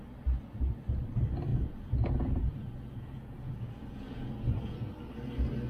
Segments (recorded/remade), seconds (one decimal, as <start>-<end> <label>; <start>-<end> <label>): 0.0-1.5 recorded; 1.5-4.9 remade; 4.9-5.7 recorded